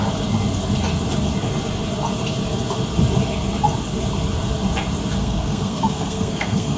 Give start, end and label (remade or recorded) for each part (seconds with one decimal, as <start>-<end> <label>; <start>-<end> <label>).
0.0-5.2 recorded; 5.2-6.8 remade